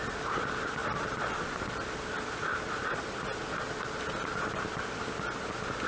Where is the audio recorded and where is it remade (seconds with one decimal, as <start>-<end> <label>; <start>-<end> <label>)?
0.0-5.9 recorded

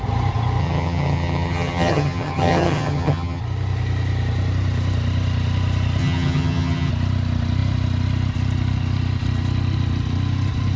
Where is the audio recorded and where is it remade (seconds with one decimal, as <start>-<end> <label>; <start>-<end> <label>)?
0.0-0.6 recorded; 0.6-3.4 remade; 3.4-6.0 recorded; 6.0-6.9 remade; 6.9-10.8 recorded